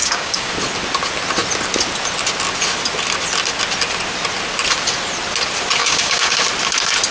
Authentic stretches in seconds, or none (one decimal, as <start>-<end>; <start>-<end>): 0.5-5.8; 6.4-7.1